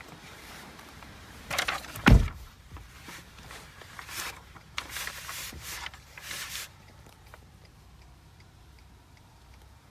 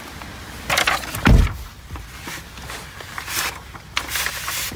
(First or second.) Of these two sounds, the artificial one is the first